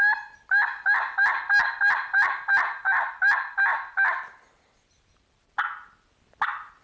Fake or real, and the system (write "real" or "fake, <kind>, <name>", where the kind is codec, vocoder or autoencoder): real